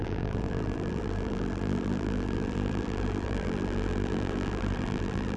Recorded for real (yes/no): no